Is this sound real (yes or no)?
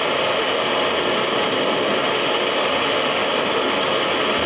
yes